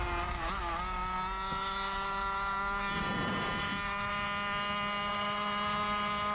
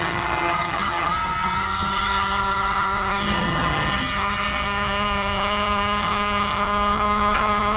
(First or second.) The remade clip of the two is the second